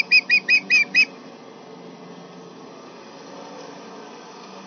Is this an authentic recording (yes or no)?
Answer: yes